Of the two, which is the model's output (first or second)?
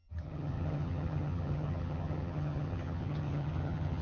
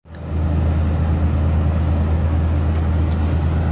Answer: first